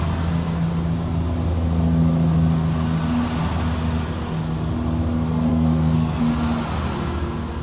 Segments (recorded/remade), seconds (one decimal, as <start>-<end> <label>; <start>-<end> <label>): 0.0-5.5 recorded; 5.5-6.2 remade; 6.2-7.6 recorded